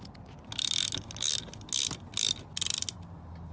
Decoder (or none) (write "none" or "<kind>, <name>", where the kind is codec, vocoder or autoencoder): none